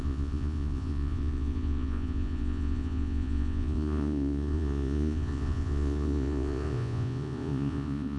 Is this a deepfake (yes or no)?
yes